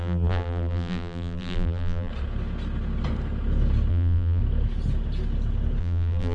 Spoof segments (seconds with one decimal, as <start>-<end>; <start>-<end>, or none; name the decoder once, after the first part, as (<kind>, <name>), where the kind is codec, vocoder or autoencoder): 0.0-2.1 (vocoder, BigVGAN v2); 3.9-4.4; 5.8-6.3